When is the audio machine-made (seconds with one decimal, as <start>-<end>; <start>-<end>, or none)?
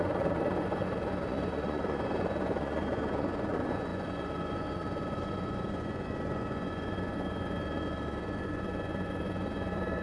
0.0-10.0